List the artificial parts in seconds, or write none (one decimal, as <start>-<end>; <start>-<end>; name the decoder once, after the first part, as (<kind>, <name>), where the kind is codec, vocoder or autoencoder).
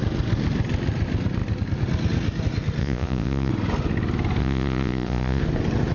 2.8-3.5 (vocoder, Vocos); 4.4-5.4